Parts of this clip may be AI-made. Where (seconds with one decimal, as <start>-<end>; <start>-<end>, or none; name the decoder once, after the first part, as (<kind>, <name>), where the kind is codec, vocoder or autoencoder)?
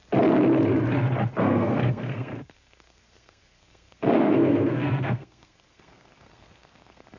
1.4-7.2 (codec, SNAC)